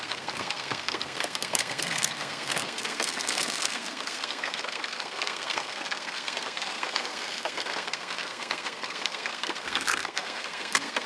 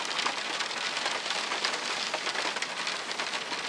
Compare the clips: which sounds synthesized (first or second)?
first